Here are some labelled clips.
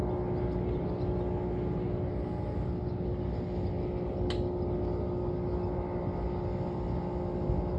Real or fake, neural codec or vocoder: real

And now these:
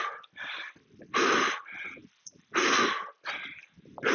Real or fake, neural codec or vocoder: real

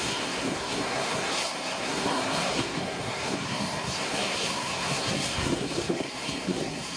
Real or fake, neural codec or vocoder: fake, codec, SNAC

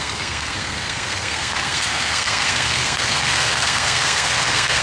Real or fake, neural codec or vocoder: fake, codec, SNAC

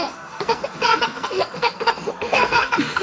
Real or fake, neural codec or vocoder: fake, codec, SNAC